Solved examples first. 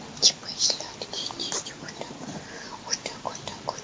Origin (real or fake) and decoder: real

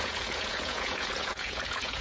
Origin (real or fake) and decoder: fake, vocoder, Vocos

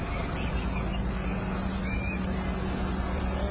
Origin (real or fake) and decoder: real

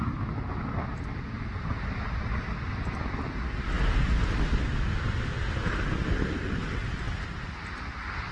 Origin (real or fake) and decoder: real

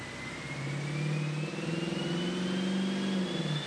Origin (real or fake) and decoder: real